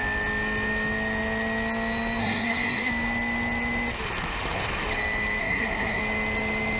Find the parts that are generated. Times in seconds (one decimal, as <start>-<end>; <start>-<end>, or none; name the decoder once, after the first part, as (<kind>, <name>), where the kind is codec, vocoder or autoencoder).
2.2-2.9 (codec, SNAC); 5.4-6.0